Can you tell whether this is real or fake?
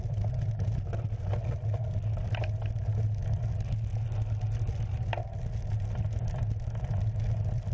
real